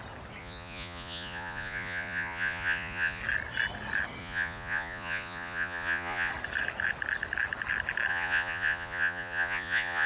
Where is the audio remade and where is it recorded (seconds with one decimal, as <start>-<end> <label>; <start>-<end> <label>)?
0.0-0.4 recorded; 0.4-3.2 remade; 3.2-4.2 recorded; 4.2-6.3 remade; 6.3-8.1 recorded; 8.1-10.1 remade